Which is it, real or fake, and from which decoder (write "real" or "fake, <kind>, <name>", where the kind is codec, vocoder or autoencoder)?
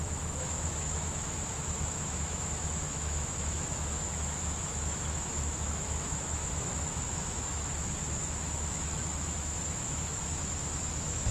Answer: fake, autoencoder, DAC-VAE